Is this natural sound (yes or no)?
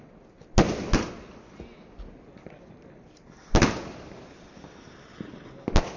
yes